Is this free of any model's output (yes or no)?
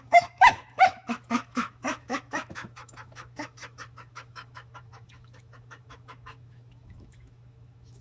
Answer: no